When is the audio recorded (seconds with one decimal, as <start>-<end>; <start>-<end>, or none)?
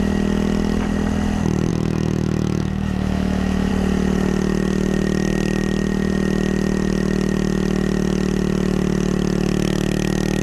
0.0-1.7; 3.7-10.4